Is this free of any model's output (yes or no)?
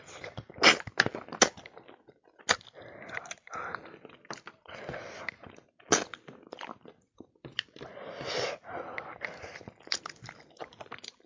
yes